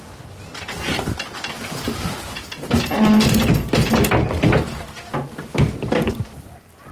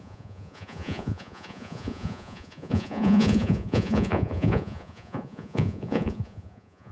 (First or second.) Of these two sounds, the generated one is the second